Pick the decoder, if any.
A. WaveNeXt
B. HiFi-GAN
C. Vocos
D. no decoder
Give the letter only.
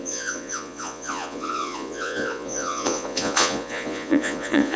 C